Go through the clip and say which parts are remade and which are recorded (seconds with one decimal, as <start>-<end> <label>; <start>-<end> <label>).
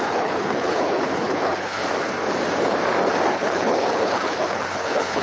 0.0-1.8 remade; 1.8-3.3 recorded; 3.3-5.2 remade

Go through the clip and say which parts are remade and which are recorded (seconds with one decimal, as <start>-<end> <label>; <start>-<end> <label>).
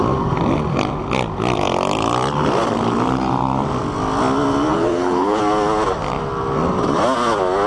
0.0-4.7 recorded; 4.7-5.4 remade; 5.4-7.7 recorded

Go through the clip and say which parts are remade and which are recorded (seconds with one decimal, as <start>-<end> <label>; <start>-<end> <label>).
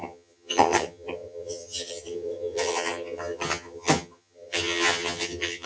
0.0-5.7 remade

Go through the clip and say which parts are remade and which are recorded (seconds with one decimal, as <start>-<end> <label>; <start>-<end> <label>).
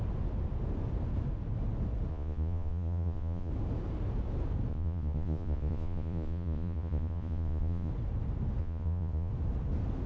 0.0-2.1 recorded; 2.1-3.5 remade; 3.5-4.7 recorded; 4.7-7.9 remade; 7.9-8.6 recorded; 8.6-9.3 remade; 9.3-10.1 recorded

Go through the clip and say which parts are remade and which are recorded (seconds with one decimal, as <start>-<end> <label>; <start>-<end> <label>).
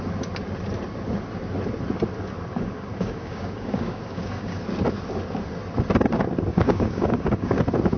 0.0-2.5 recorded; 2.5-4.6 remade; 4.6-6.5 recorded; 6.5-7.6 remade; 7.6-8.0 recorded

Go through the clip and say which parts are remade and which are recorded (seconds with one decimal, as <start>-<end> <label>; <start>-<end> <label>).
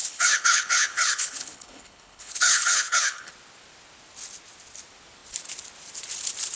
0.0-3.3 remade; 3.3-6.6 recorded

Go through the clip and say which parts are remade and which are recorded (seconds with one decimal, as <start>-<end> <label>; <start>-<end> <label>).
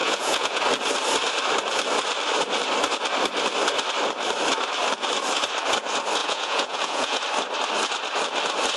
0.0-0.6 remade; 0.6-6.2 recorded; 6.2-7.2 remade; 7.2-8.8 recorded